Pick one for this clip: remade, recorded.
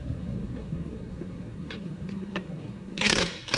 remade